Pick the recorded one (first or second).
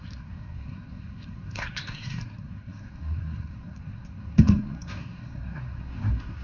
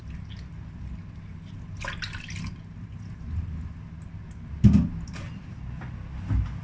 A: second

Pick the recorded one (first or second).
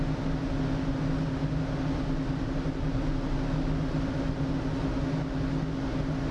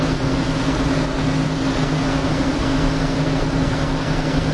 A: first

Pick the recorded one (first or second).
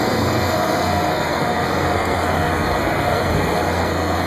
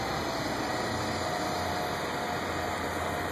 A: second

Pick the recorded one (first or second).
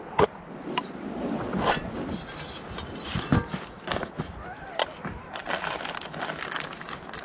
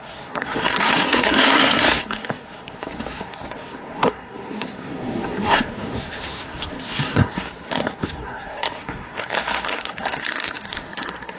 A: first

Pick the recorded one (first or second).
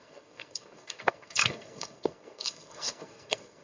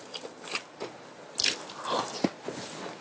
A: second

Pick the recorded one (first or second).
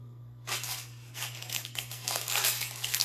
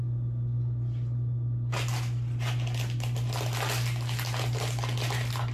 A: second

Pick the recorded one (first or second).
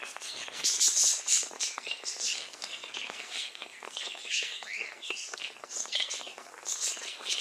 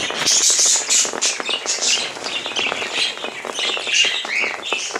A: second